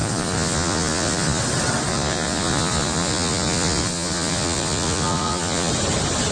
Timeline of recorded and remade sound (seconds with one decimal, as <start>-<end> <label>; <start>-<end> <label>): 0.0-1.4 remade; 1.4-1.9 recorded; 1.9-5.7 remade; 5.7-6.3 recorded